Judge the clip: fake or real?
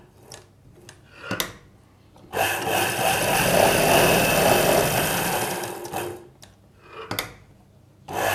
real